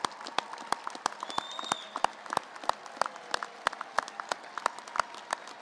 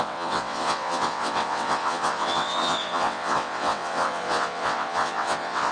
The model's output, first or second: second